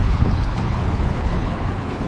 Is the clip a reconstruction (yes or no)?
yes